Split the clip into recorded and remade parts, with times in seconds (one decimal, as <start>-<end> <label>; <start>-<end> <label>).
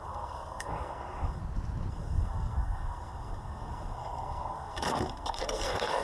0.0-1.4 remade; 1.4-1.9 recorded; 1.9-6.0 remade